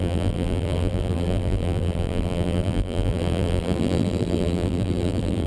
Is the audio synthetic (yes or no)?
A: yes